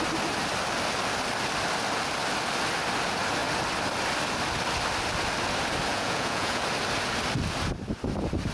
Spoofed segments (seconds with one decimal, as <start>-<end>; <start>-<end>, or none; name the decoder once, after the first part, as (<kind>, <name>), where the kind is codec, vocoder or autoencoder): 5.9-6.6 (vocoder, Vocos)